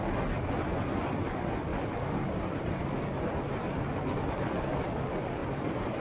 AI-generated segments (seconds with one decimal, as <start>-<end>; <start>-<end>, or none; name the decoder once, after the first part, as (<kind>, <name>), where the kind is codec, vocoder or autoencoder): 1.7-2.8 (vocoder, BigVGAN v2); 5.4-6.0